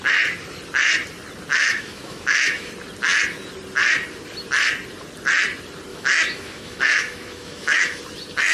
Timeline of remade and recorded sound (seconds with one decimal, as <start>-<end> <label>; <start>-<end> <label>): 0.0-1.5 recorded; 1.5-2.7 remade; 2.7-5.9 recorded; 5.9-8.0 remade; 8.0-8.5 recorded